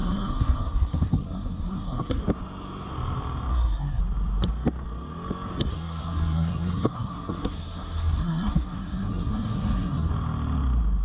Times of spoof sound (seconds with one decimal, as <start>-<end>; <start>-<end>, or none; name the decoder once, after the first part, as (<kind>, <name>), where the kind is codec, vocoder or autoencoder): 0.0-2.2 (codec, SNAC); 3.5-4.0; 5.7-10.1